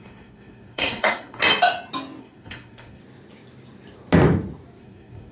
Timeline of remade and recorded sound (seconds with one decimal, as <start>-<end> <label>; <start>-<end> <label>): 0.0-1.4 remade; 1.4-2.2 recorded; 2.2-3.0 remade; 3.0-4.8 recorded; 4.8-5.3 remade